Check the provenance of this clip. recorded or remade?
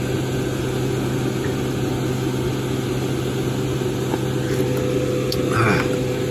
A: recorded